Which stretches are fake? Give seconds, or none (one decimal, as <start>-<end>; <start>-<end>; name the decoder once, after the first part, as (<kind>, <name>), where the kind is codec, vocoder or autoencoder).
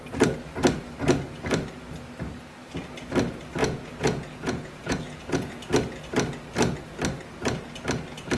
3.6-5.7 (vocoder, Vocos)